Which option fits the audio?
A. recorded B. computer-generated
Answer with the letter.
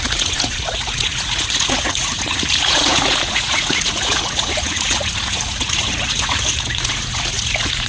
B